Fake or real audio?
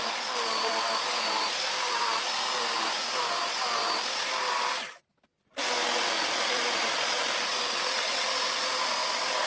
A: fake